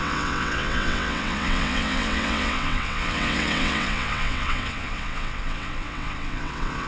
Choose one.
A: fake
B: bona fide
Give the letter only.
A